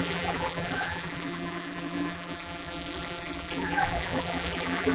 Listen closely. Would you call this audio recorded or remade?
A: remade